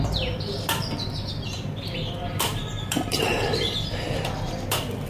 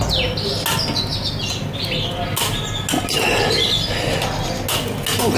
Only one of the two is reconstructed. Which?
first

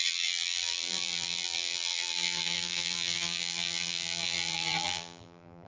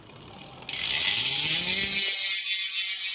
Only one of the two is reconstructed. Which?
first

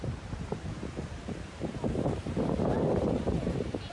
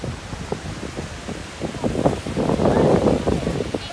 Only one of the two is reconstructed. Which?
first